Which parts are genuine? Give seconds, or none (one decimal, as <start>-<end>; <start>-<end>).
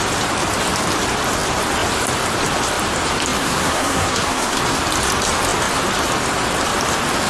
0.0-3.4; 4.6-7.3